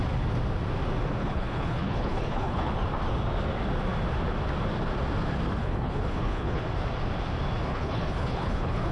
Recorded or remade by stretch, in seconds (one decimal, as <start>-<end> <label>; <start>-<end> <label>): 0.0-1.2 recorded; 1.2-2.7 remade; 2.7-5.6 recorded; 5.6-6.6 remade; 6.6-7.7 recorded; 7.7-8.9 remade